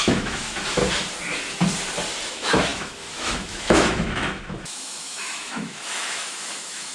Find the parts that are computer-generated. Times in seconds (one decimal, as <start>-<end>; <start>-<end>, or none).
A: 0.0-0.8; 2.3-6.9